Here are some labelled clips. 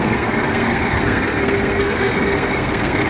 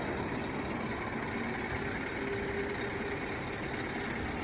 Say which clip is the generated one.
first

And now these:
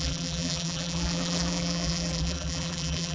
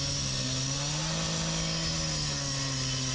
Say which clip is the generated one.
first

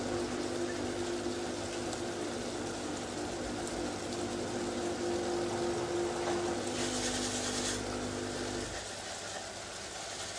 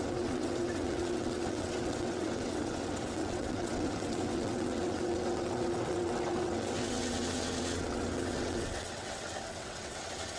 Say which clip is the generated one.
second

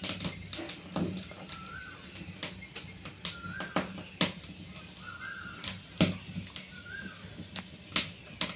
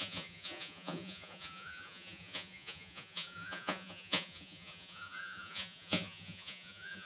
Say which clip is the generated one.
second